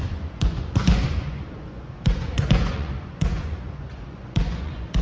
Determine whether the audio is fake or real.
fake